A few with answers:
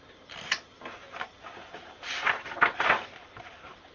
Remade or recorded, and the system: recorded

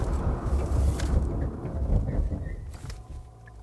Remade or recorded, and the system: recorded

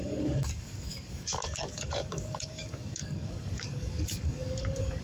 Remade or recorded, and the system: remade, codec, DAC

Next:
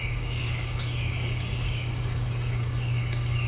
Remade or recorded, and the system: remade, codec, DAC